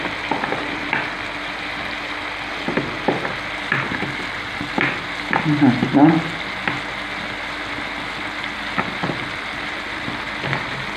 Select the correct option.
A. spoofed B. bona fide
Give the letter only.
B